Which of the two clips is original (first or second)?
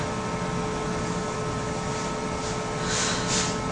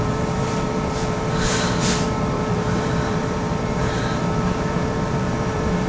first